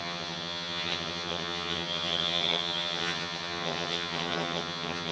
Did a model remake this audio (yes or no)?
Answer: yes